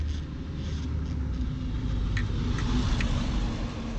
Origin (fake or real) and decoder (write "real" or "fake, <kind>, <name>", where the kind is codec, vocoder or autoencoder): real